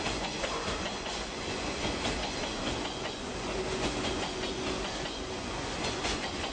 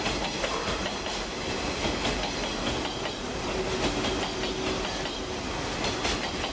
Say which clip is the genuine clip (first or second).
second